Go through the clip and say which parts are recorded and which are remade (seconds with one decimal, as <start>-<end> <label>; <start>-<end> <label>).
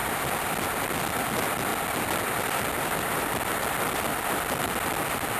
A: 0.0-5.4 recorded